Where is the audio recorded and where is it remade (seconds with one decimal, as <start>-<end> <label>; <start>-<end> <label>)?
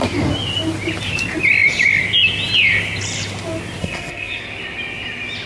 0.0-3.8 recorded; 3.8-4.4 remade; 4.4-5.5 recorded